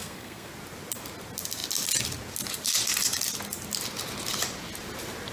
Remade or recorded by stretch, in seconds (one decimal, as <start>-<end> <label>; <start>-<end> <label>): 0.0-0.5 remade; 0.5-5.3 recorded